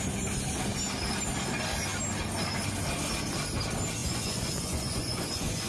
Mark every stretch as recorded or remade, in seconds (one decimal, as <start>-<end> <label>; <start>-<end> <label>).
0.0-4.0 recorded; 4.0-5.7 remade